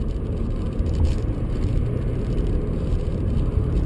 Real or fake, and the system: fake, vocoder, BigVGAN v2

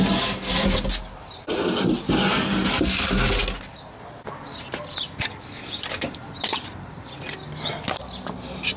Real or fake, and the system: real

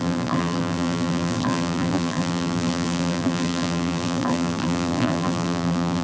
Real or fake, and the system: fake, vocoder, BigVGAN v2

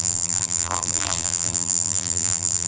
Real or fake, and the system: fake, vocoder, BigVGAN v2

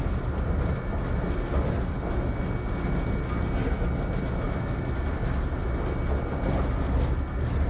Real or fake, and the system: real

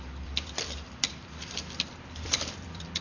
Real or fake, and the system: fake, vocoder, BigVGAN v2